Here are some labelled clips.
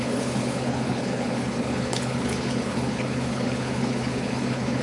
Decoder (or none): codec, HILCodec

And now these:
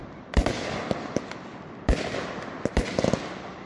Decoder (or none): none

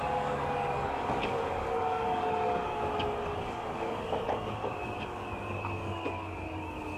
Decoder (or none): codec, DAC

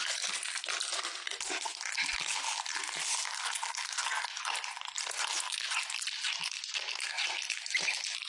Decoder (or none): none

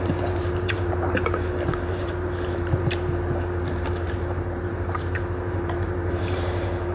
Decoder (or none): vocoder, BigVGAN v2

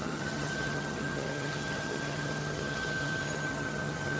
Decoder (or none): vocoder, HiFi-GAN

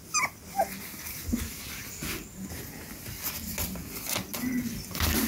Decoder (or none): none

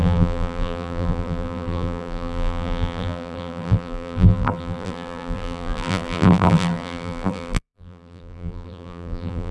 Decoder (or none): vocoder, BigVGAN v2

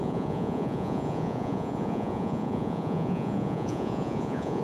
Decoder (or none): vocoder, Vocos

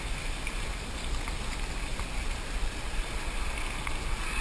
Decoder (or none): none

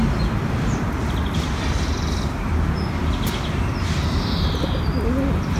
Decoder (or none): vocoder, BigVGAN v2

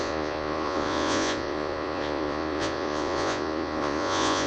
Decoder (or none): vocoder, Vocos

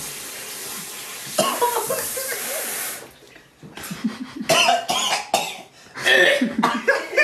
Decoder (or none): none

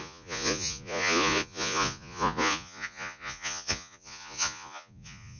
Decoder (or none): vocoder, Vocos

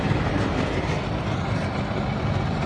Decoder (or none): none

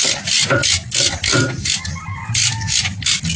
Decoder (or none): none